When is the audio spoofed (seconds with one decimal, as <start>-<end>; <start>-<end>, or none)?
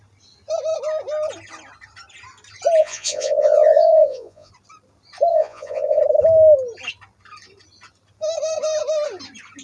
2.8-4.5; 5.3-6.0